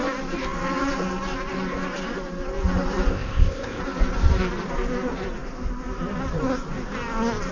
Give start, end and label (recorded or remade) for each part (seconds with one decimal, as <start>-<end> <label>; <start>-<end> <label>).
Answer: 0.0-3.1 recorded; 3.1-3.8 remade; 3.8-7.5 recorded